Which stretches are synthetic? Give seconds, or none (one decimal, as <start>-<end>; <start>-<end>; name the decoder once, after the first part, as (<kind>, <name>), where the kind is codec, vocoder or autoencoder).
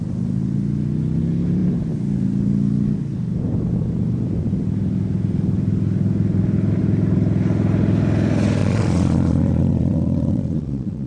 8.6-11.1 (vocoder, Vocos)